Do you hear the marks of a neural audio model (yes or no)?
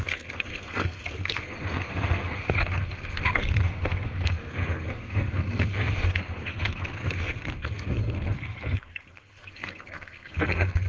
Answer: yes